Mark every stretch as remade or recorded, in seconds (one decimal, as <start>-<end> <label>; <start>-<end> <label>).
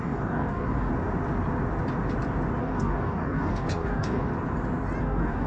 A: 0.0-0.9 remade; 0.9-2.6 recorded; 2.6-4.3 remade; 4.3-5.0 recorded; 5.0-5.5 remade